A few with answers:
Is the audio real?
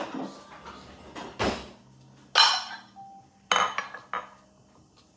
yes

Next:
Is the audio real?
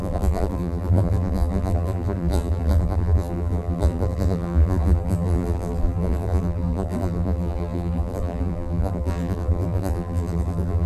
no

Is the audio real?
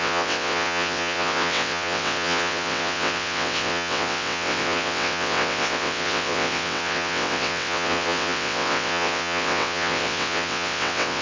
no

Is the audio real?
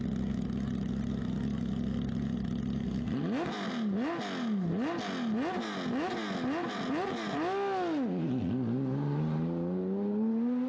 yes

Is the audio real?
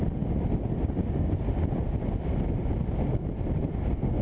yes